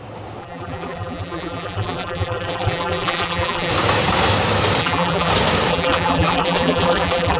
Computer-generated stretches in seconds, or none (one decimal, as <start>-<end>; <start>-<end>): 0.4-3.7; 4.8-5.3; 5.7-7.4